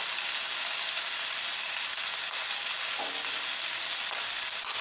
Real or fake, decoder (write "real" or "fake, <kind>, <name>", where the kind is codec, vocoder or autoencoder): real